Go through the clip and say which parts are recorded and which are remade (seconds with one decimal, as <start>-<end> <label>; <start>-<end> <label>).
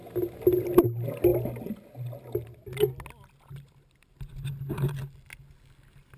0.0-6.2 recorded